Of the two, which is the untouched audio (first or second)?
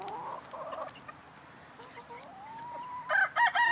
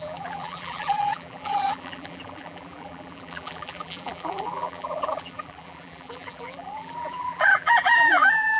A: first